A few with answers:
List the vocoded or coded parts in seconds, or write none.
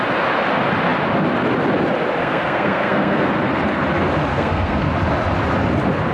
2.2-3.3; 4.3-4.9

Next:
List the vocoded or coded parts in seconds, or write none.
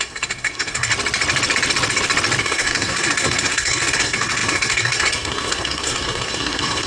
0.0-0.9; 2.4-6.9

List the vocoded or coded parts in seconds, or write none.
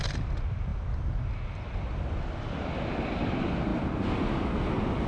none